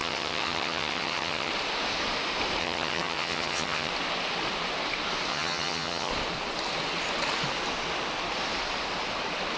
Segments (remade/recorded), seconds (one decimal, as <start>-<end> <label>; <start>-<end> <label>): 0.0-1.5 remade; 1.5-2.6 recorded; 2.6-3.9 remade; 3.9-5.3 recorded; 5.3-6.1 remade; 6.1-9.6 recorded